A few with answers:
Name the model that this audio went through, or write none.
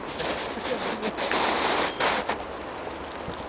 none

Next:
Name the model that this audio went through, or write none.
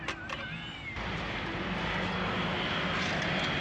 none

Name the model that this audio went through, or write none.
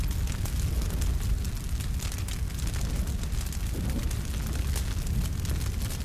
none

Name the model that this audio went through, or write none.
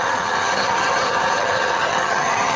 vocoder, HiFi-GAN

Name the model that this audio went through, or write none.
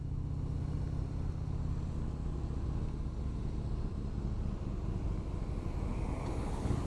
none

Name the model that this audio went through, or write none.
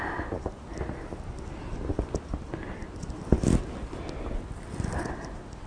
none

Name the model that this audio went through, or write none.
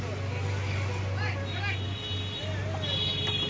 none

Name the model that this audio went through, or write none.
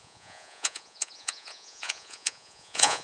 vocoder, Vocos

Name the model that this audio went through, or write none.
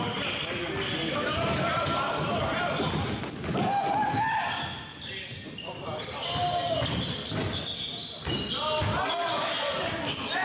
none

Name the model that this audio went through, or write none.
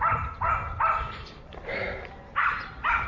none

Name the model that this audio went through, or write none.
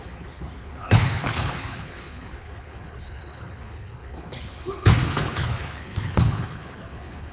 codec, HILCodec